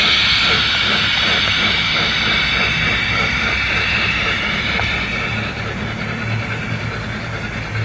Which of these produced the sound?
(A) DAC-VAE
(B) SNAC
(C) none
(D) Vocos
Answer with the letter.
C